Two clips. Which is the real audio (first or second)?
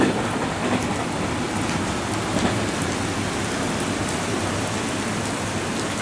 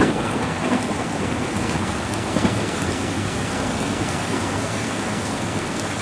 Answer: first